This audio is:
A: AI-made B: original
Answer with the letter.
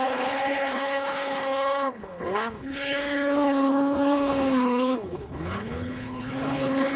A